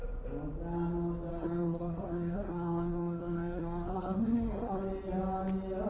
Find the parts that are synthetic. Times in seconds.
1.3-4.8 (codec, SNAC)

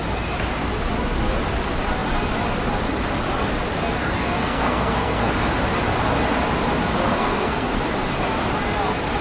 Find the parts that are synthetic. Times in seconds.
4.0-5.3 (codec, SNAC); 7.1-7.8

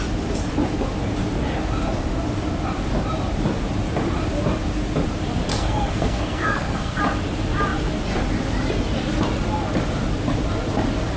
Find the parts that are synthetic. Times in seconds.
5.5-7.0 (codec, SNAC)